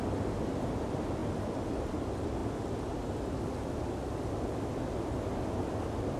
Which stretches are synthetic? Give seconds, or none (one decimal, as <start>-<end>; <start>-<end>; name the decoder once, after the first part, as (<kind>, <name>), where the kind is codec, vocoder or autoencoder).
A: none